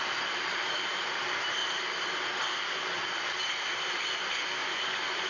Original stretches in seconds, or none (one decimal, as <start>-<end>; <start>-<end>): 0.0-4.6